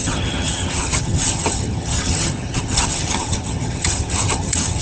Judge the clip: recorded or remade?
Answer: remade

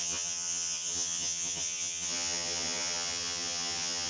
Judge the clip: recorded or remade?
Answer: remade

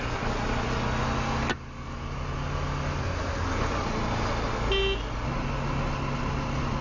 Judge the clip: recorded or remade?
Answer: recorded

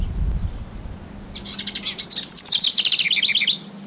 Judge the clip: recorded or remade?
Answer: recorded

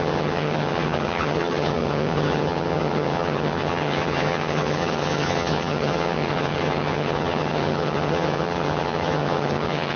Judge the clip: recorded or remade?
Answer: remade